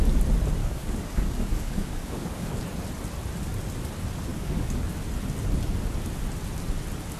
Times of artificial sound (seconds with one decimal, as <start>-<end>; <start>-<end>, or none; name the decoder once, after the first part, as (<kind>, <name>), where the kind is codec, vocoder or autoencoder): 0.6-2.6 (codec, DAC); 4.3-4.9